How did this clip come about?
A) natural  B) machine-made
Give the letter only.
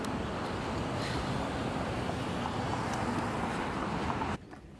A